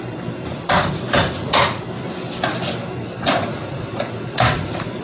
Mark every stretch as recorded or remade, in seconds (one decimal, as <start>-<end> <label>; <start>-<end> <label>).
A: 0.0-0.5 recorded; 0.5-1.8 remade; 1.8-3.4 recorded; 3.4-5.0 remade